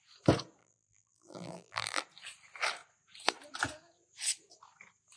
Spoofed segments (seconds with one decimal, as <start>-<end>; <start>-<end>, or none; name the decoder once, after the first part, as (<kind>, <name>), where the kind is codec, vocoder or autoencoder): 0.6-2.0 (vocoder, BigVGAN v2)